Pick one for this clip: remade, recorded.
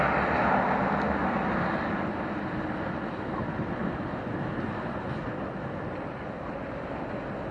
recorded